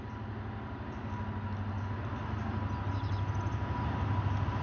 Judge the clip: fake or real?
real